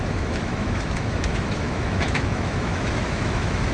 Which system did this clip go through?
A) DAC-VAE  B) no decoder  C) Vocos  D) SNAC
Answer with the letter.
A